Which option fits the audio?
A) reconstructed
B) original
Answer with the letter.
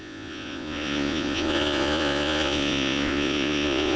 A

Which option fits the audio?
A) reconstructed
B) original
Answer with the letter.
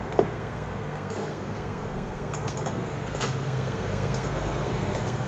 A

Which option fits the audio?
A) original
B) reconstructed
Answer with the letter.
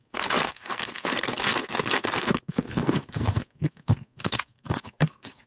B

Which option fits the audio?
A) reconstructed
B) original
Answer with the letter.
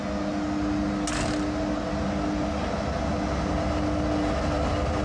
B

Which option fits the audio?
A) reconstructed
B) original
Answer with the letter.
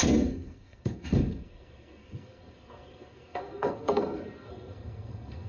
A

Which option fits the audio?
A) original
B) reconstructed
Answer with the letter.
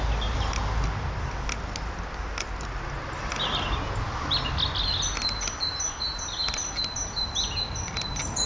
A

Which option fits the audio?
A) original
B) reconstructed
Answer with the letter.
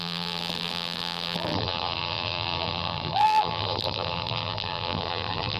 B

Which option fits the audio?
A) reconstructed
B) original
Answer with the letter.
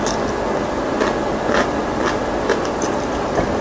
B